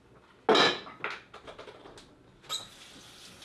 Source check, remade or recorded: recorded